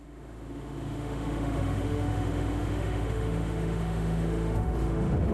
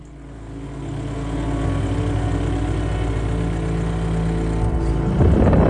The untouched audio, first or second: second